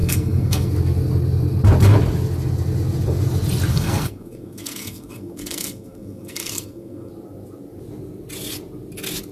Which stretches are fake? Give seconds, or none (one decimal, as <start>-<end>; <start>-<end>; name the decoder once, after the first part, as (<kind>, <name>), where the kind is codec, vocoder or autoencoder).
0.0-0.7 (codec, SNAC); 3.7-7.1